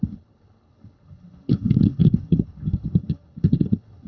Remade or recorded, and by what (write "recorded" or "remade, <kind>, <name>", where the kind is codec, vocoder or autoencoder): remade, codec, HILCodec